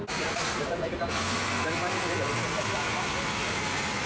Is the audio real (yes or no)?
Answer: yes